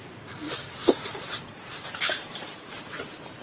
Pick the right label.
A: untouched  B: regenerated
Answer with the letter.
B